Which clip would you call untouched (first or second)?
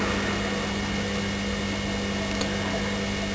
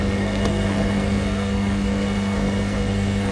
first